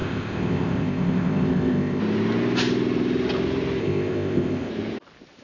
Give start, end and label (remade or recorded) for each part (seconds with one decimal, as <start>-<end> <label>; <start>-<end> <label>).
0.0-2.0 remade; 2.0-3.8 recorded; 3.8-4.7 remade; 4.7-5.4 recorded